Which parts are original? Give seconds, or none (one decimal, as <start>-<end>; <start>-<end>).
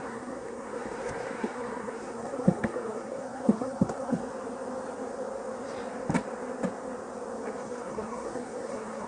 4.2-7.6